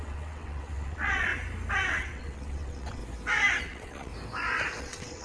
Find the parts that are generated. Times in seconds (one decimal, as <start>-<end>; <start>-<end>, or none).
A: 0.0-1.3; 1.9-3.0; 3.6-4.1; 4.8-5.2